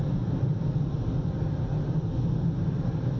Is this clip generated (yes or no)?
no